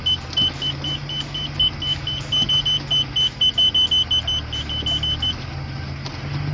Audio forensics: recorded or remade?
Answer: recorded